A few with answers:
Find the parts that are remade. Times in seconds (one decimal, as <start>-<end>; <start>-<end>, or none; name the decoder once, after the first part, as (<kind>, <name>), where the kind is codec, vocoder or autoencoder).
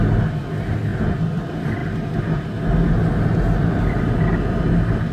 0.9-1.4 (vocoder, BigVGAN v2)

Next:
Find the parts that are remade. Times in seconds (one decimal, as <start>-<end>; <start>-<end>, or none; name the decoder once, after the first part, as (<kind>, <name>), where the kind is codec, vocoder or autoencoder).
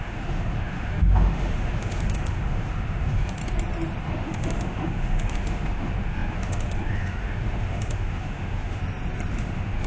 0.0-3.4 (autoencoder, DAC-VAE); 4.0-8.8; 9.3-9.9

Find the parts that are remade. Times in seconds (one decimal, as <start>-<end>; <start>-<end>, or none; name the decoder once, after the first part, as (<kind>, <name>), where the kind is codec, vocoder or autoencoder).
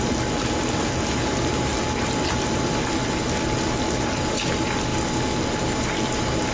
0.0-1.7 (vocoder, BigVGAN v2); 2.2-4.9; 5.8-6.5